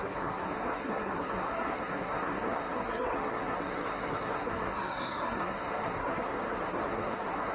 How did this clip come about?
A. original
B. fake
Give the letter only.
B